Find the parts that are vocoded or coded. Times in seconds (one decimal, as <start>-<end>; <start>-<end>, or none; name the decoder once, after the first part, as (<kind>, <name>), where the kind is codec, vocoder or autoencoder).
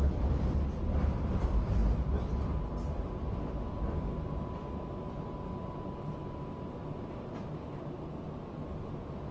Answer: none